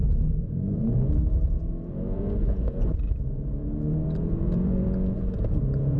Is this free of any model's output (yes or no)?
no